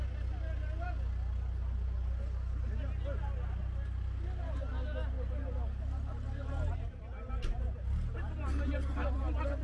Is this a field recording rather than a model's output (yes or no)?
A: yes